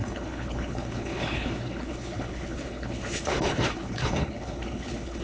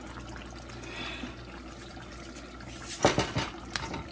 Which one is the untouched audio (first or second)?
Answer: second